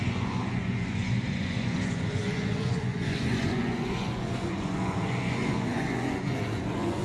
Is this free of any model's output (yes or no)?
no